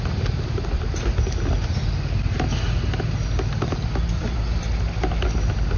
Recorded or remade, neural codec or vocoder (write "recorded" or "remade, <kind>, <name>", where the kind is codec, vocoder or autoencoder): recorded